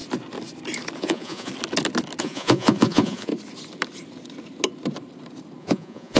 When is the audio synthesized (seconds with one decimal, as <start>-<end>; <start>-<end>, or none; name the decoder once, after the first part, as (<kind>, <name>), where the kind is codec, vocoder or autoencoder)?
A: 1.0-1.5 (vocoder, Vocos); 2.2-3.3; 5.6-6.2